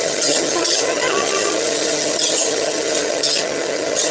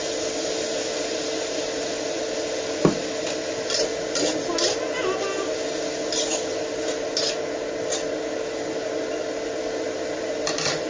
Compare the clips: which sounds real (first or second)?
second